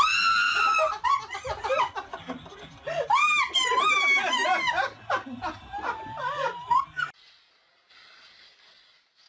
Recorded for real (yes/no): yes